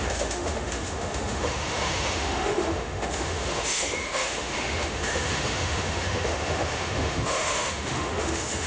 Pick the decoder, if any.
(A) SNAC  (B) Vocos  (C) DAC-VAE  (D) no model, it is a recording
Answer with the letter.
C